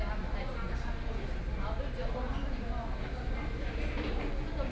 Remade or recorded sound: recorded